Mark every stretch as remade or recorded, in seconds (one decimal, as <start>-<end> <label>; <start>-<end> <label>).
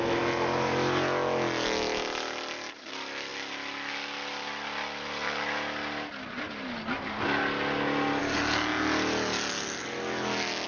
0.0-10.7 recorded